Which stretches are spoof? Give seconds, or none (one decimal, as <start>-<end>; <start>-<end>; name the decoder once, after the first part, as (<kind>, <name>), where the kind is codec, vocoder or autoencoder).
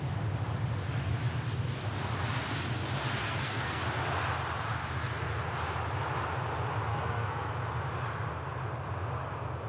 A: 3.2-3.8 (codec, SNAC); 6.9-7.5